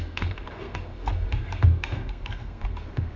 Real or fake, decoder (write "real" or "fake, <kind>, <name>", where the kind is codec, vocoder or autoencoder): fake, codec, SNAC